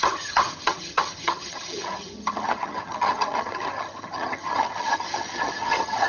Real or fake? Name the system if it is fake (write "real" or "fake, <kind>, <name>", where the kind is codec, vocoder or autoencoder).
fake, vocoder, HiFi-GAN